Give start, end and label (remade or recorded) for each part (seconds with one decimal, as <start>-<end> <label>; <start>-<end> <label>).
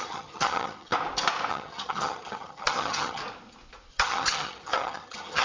0.0-0.9 remade; 0.9-1.5 recorded; 1.5-3.2 remade; 3.2-3.9 recorded; 3.9-5.4 remade